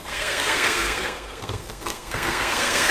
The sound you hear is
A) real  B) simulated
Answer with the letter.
B